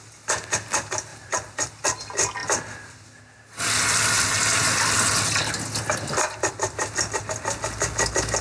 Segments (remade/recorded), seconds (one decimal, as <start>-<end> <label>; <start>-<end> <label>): 0.0-1.1 recorded; 1.1-1.7 remade; 1.7-8.4 recorded